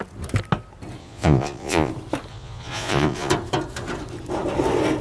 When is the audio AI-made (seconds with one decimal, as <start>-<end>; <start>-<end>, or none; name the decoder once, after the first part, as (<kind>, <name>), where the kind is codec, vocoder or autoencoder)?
1.0-1.9 (vocoder, Vocos); 2.3-3.3